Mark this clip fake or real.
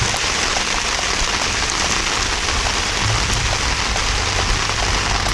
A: real